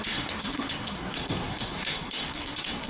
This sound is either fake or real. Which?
fake